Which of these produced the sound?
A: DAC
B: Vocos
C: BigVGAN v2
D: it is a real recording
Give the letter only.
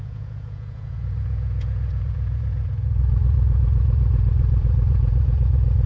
B